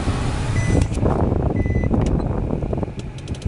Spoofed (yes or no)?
no